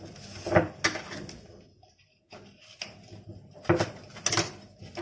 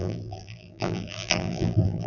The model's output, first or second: second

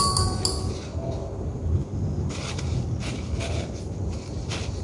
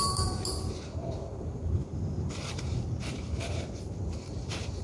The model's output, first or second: second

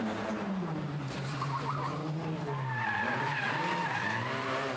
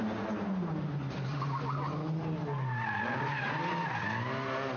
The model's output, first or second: first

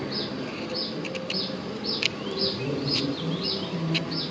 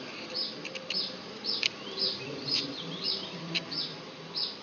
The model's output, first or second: second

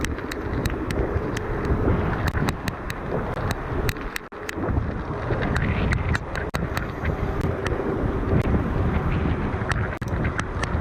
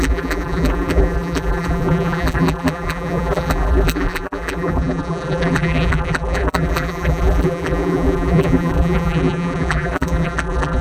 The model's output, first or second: second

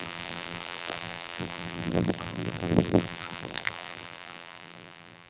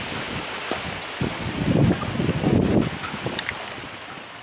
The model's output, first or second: first